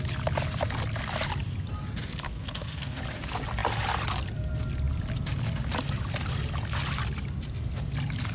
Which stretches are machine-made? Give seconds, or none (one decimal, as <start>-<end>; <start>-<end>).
2.3-3.0